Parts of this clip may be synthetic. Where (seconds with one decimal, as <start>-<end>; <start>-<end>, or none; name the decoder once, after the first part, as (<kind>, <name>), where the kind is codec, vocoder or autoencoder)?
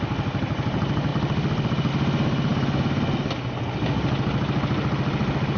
none